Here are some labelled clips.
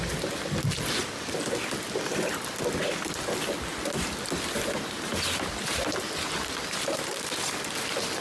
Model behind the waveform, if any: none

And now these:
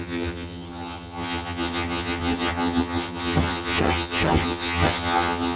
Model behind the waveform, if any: vocoder, HiFi-GAN